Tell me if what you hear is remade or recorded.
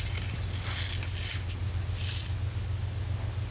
recorded